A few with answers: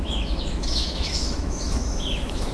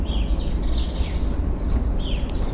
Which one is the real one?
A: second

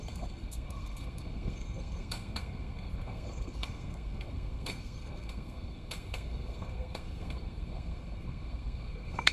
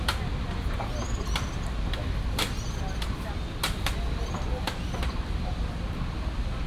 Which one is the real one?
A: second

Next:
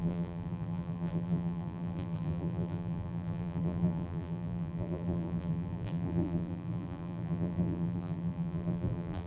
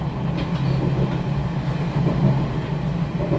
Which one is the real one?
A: second